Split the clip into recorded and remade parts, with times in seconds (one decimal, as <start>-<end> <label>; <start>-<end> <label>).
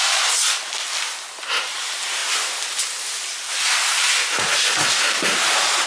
0.0-5.9 recorded